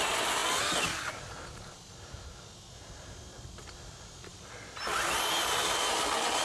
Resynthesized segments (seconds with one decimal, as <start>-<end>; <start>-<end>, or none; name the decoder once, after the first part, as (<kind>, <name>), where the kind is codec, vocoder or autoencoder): none